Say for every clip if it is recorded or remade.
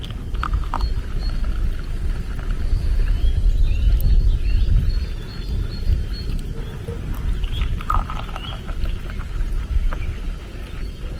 recorded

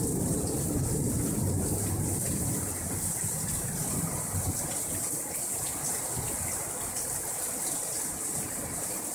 recorded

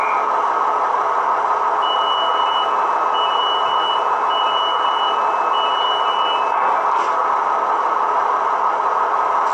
recorded